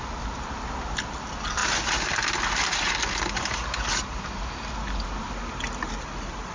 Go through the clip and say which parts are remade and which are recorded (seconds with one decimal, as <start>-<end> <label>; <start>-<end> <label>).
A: 0.0-6.5 recorded